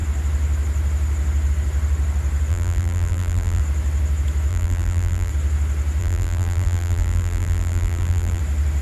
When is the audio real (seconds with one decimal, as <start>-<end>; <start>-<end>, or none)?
0.0-2.5; 3.6-4.5; 5.3-6.0; 8.4-8.8